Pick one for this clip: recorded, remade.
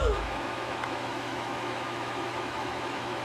remade